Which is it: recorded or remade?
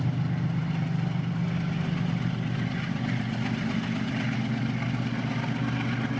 recorded